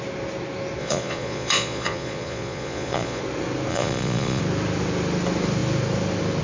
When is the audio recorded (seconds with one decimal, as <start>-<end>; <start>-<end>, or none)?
0.0-0.8; 3.2-3.7; 4.4-6.4